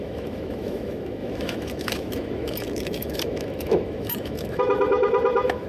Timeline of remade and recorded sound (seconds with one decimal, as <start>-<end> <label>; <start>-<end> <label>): 0.0-5.7 remade